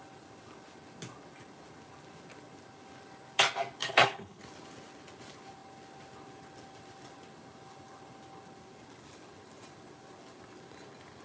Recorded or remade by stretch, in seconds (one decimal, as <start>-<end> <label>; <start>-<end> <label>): 0.0-3.8 recorded; 3.8-4.4 remade; 4.4-11.2 recorded